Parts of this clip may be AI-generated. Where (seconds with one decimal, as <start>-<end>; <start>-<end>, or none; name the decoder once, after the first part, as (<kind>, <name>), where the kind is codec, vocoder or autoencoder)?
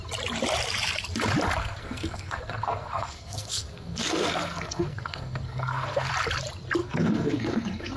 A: 1.6-6.1 (codec, SNAC); 6.8-8.0